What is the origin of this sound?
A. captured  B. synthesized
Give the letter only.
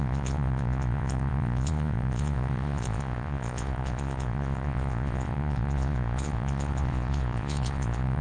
B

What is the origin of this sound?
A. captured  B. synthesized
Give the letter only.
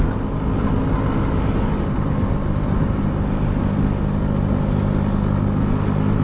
A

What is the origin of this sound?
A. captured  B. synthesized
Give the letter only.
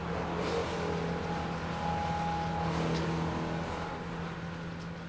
A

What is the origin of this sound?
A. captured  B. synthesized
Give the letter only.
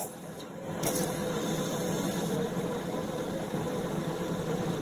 A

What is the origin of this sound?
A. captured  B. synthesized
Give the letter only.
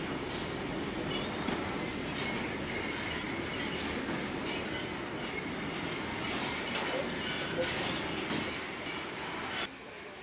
A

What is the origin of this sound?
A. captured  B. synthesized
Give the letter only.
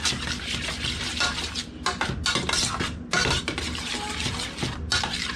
A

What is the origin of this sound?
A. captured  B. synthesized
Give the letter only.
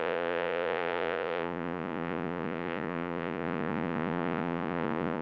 B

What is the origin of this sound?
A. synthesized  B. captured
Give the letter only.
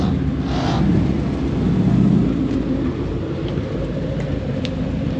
B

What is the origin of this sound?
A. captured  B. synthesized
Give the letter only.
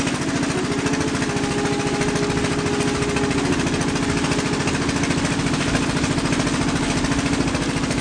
A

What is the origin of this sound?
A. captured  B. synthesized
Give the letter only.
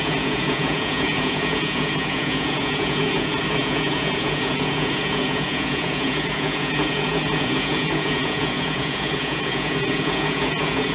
B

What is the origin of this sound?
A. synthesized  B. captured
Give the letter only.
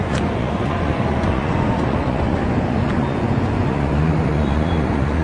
A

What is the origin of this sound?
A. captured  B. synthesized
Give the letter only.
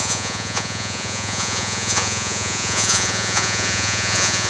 B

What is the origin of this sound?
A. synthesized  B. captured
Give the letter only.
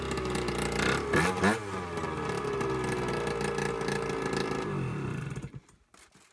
B